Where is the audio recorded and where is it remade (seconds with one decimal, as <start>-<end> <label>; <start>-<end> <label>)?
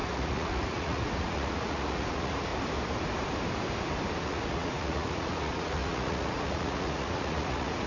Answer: 0.0-2.5 remade; 2.5-4.2 recorded; 4.2-7.9 remade